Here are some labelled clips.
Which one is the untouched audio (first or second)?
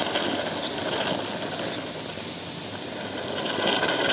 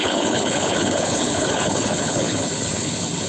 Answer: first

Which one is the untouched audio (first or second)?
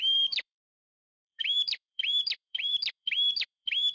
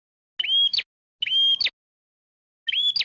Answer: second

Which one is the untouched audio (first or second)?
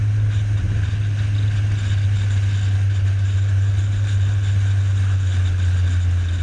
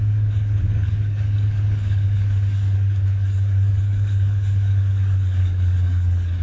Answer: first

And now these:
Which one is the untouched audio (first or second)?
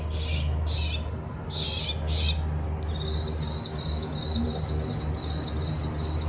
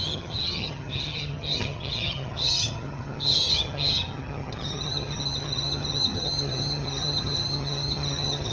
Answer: first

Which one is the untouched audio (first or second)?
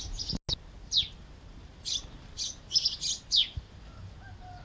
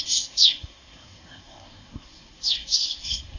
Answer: first